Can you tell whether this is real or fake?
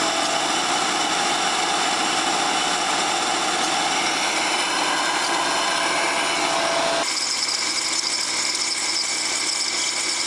real